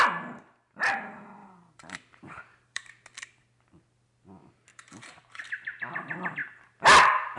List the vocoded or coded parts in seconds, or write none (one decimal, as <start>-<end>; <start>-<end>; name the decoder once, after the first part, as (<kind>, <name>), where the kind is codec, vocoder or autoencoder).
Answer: 1.4-2.9 (vocoder, BigVGAN v2); 4.7-5.4; 6.4-7.4